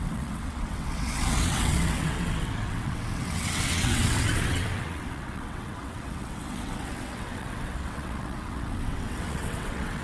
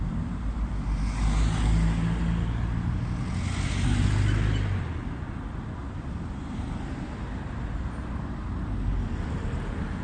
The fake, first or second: first